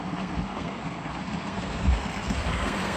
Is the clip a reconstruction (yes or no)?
yes